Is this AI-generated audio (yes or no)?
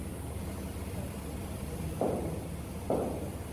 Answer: no